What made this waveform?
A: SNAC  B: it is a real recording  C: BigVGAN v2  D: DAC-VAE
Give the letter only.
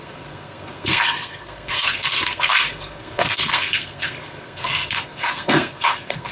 A